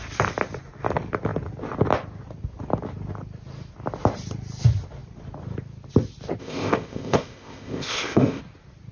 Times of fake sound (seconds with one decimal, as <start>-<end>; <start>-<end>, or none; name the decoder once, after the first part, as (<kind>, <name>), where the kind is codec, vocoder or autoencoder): 6.4-8.4 (codec, ZipCodec)